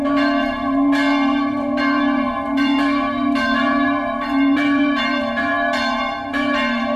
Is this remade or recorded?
remade